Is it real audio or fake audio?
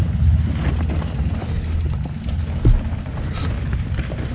real